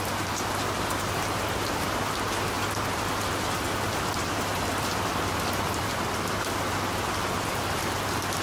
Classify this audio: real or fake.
real